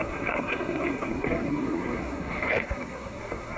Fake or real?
fake